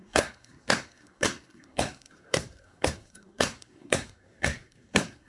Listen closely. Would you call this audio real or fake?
fake